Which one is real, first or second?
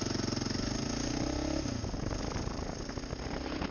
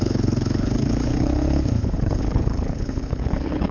first